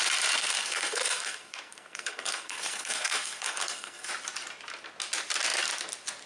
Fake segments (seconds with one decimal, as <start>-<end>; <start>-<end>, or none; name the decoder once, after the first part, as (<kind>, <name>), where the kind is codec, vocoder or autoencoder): 0.4-4.1 (codec, SNAC)